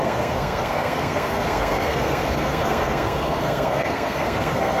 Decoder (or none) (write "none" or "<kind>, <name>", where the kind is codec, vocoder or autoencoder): codec, SNAC